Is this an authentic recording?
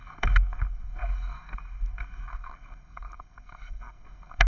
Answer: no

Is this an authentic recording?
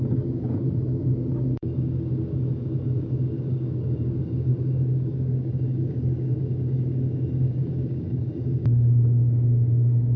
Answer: no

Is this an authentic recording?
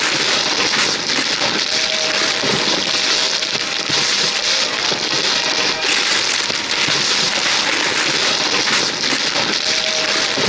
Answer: yes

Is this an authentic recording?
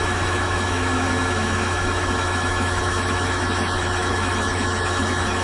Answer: no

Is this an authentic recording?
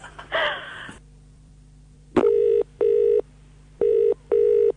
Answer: no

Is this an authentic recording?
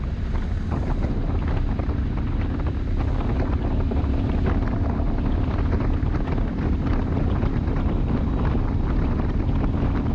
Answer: yes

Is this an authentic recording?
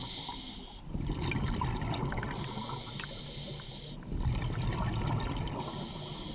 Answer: yes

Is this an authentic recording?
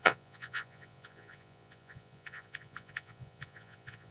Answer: no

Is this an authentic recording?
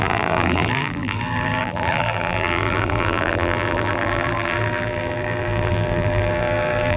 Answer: no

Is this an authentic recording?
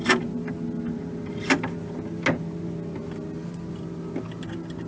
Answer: yes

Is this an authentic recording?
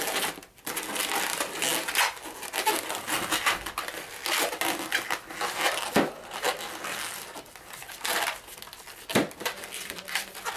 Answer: yes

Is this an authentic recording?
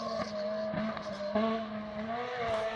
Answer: yes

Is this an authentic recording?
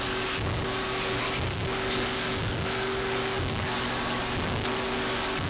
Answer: no